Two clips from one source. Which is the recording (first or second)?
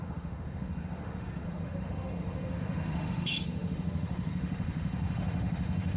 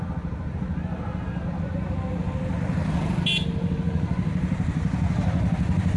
second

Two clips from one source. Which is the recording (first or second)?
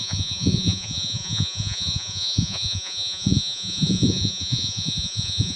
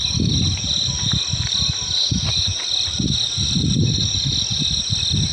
second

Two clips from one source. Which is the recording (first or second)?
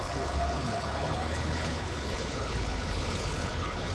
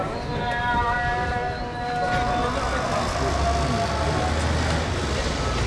second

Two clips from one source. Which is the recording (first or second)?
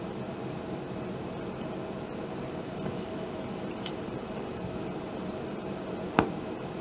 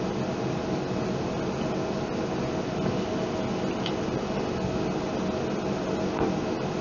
second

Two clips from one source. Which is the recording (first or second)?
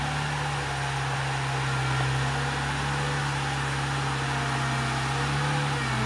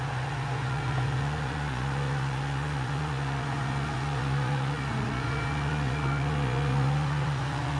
first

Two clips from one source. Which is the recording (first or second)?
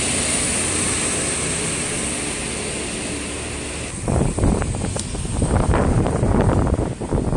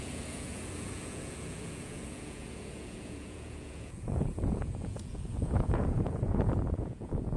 first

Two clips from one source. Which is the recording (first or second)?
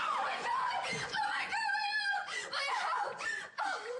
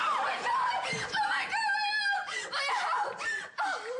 second